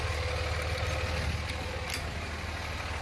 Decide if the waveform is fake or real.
real